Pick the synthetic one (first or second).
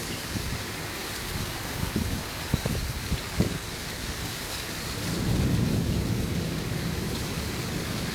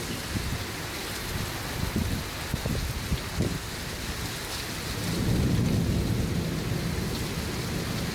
first